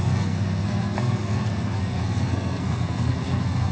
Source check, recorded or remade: remade